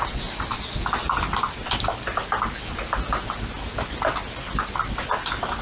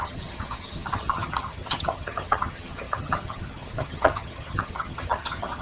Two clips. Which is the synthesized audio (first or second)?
second